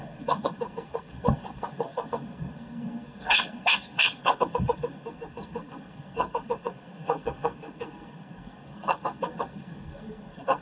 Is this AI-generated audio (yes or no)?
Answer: yes